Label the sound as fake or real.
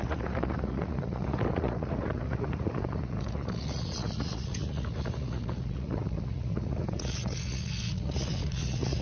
fake